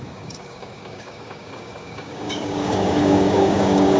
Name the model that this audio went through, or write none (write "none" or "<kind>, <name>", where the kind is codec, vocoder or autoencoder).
codec, DAC